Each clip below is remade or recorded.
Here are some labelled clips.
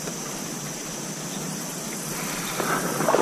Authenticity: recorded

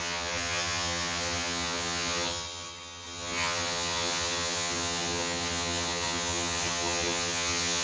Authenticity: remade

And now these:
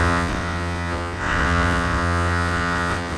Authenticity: remade